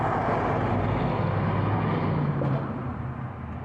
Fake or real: real